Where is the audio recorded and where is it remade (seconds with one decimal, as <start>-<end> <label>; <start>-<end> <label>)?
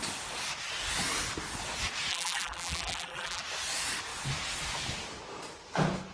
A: 0.0-2.1 recorded; 2.1-3.4 remade; 3.4-6.1 recorded